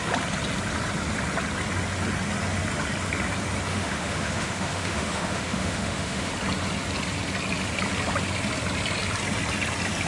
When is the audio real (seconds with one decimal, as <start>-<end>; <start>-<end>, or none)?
0.0-3.7; 6.3-10.1

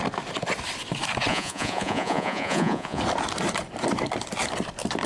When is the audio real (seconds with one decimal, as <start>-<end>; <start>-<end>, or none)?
0.0-1.3; 3.0-5.1

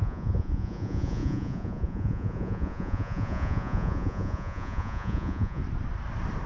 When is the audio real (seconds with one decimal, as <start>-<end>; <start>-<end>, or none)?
5.6-6.5

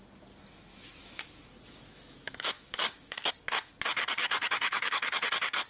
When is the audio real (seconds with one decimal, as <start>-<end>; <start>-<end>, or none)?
0.0-0.7; 3.3-4.2; 5.3-5.7

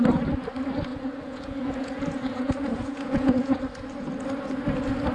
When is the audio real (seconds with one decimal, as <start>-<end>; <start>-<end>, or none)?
0.0-0.9; 3.6-5.1

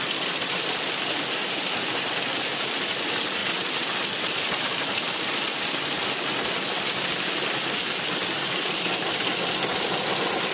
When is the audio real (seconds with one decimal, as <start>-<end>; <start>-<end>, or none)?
0.0-10.5

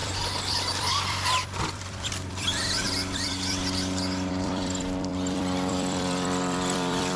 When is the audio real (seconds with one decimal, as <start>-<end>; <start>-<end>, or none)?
none